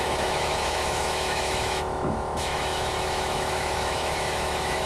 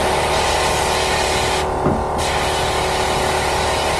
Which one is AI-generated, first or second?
first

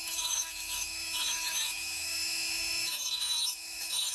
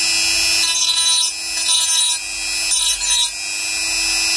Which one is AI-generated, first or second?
first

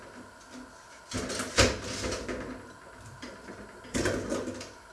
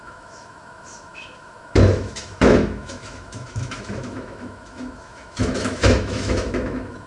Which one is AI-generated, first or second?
second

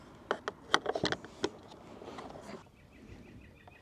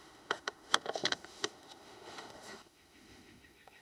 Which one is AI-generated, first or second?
second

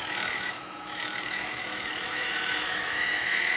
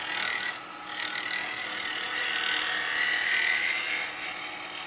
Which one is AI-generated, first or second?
first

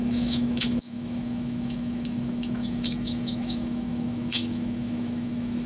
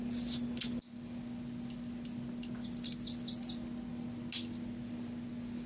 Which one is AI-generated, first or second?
first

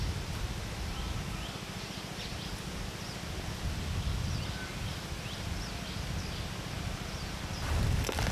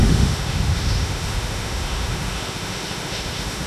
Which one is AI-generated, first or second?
second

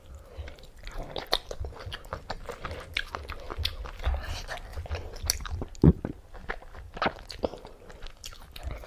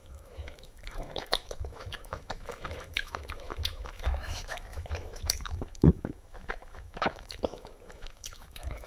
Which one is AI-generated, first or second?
second